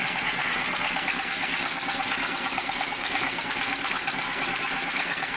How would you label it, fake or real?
fake